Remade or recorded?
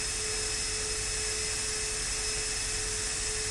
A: recorded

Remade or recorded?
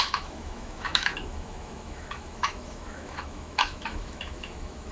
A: remade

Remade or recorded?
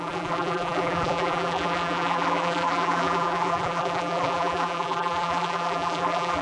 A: remade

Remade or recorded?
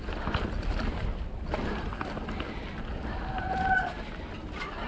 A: recorded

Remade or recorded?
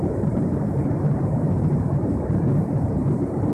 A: remade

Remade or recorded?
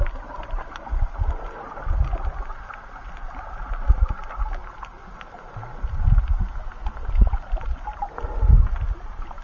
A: recorded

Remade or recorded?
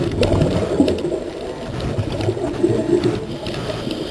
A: recorded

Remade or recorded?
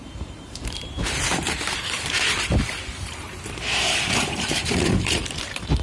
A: remade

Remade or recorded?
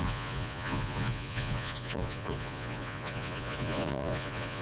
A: remade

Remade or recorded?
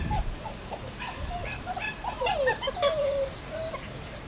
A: remade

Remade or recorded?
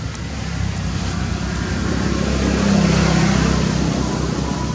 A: recorded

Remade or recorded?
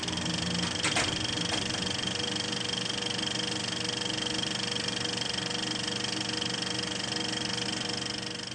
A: recorded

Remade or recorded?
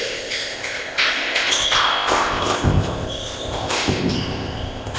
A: remade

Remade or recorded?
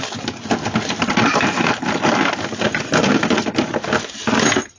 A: recorded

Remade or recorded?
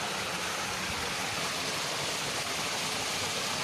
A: recorded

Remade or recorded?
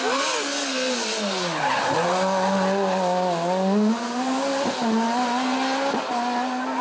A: recorded